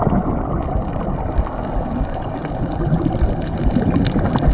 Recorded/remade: recorded